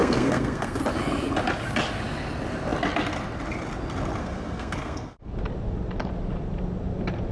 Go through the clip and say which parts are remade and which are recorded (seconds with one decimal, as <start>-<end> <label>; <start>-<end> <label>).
0.0-0.8 remade; 0.8-4.2 recorded; 4.2-5.3 remade; 5.3-7.3 recorded